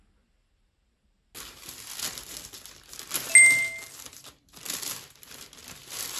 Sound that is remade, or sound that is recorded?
recorded